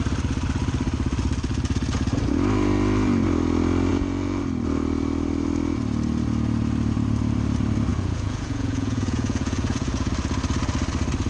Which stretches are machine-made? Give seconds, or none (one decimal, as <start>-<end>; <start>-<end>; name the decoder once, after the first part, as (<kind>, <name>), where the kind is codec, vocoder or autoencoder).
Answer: 3.9-4.4 (vocoder, Vocos); 7.9-10.1